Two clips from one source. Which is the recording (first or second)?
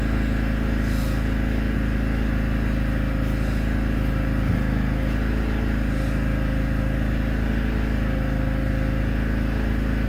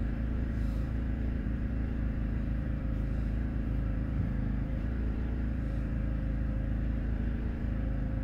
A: first